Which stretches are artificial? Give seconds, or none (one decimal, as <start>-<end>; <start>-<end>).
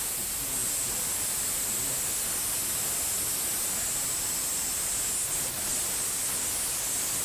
0.6-1.9